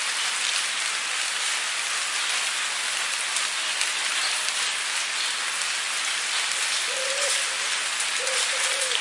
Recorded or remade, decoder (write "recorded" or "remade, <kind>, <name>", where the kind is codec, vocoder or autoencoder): recorded